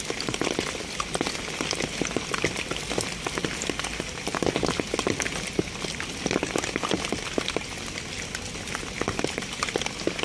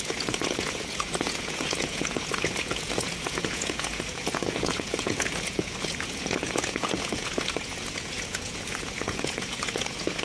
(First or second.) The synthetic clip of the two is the second